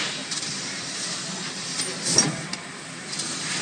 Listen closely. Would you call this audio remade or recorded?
recorded